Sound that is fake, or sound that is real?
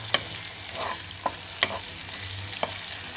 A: real